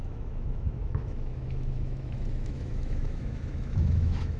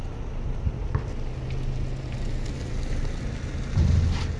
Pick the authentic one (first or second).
second